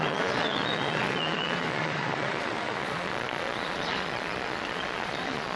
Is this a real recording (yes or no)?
no